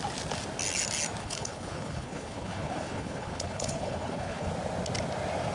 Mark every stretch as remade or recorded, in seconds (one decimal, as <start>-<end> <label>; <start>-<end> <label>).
0.0-1.2 recorded; 1.2-4.5 remade; 4.5-5.5 recorded

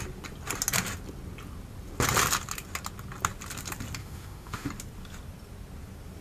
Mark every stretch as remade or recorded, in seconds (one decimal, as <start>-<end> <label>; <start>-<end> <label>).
0.0-4.0 recorded; 4.0-4.7 remade; 4.7-6.2 recorded